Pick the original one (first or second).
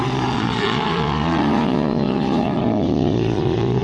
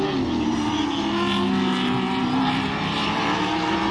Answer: second